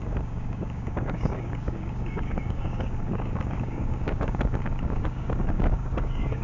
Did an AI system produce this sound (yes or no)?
yes